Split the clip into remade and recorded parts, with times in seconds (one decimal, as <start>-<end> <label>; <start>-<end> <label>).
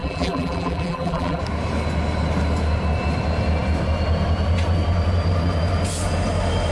0.0-1.4 remade; 1.4-6.7 recorded